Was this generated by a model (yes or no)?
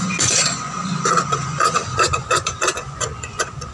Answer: yes